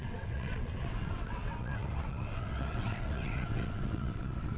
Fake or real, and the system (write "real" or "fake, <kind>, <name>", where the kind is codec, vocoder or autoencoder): fake, vocoder, WaveNeXt